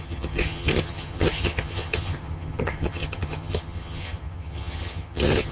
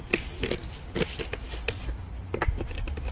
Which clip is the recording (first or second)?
second